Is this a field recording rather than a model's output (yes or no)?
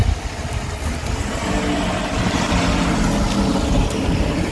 yes